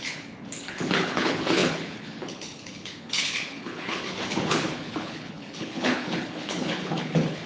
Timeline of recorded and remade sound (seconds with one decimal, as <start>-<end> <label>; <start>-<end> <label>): 0.0-7.5 remade